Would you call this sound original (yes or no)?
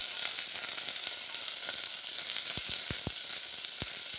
yes